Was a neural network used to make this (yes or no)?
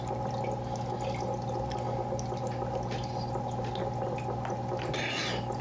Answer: no